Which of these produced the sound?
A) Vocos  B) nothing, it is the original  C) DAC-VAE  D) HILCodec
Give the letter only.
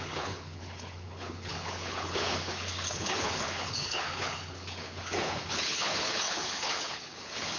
D